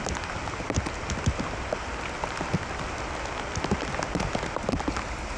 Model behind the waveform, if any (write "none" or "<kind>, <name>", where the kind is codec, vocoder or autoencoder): none